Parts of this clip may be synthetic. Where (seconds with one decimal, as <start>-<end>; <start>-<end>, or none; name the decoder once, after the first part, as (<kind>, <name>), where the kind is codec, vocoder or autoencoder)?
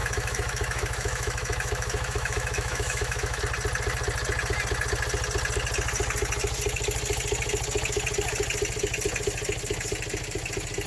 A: 0.0-3.4 (autoencoder, DAC-VAE)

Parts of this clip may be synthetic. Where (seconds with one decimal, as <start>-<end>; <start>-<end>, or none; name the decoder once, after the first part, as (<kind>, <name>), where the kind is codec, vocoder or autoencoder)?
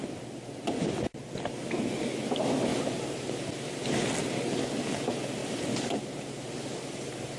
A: 2.7-3.3 (vocoder, BigVGAN v2); 5.4-7.4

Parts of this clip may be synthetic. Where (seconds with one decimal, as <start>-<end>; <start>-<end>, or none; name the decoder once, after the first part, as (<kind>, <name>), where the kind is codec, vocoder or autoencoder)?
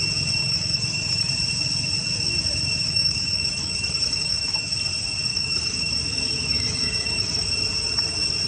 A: 0.4-1.3 (autoencoder, DAC-VAE); 2.8-4.7; 5.3-5.9; 6.5-7.5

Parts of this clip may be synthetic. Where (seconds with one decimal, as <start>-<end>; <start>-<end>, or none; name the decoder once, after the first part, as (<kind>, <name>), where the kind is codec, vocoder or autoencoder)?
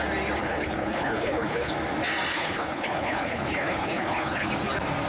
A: 0.4-1.7 (codec, HILCodec); 2.3-4.5